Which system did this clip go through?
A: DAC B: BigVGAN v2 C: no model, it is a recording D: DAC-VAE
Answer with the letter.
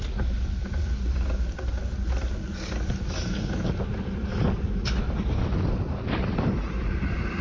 C